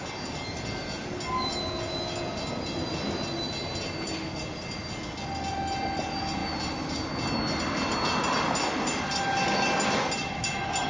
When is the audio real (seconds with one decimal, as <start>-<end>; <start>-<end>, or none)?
0.0-10.9